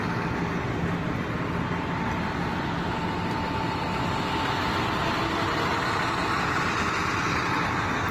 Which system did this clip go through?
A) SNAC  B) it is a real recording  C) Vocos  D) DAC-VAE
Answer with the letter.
B